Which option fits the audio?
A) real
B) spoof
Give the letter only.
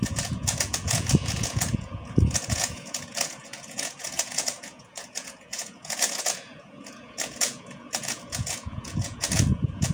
B